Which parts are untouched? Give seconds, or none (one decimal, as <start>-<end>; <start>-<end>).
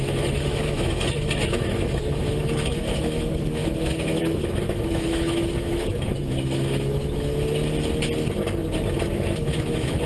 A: 7.3-9.1